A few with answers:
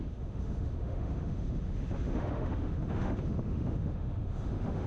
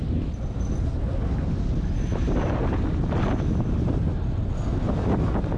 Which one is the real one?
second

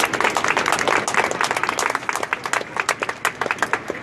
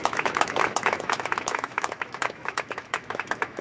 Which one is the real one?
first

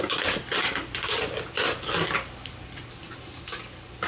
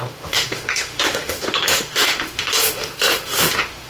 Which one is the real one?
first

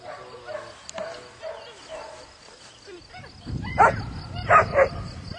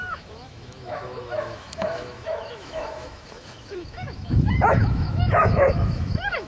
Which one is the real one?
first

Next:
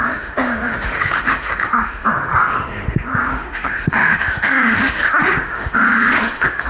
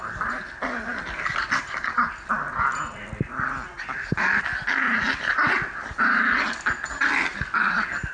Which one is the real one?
second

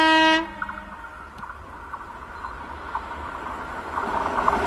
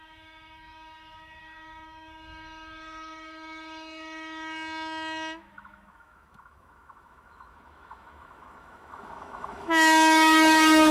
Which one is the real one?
first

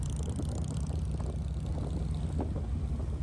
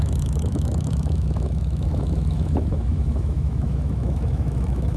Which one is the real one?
first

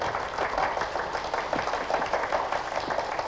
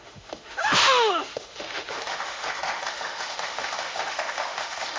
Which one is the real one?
first